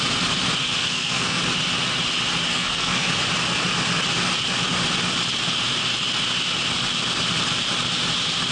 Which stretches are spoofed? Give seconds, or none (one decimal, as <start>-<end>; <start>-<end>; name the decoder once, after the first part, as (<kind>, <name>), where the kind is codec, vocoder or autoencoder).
0.6-1.4 (codec, SNAC); 2.5-3.1